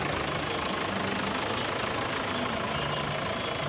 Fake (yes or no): no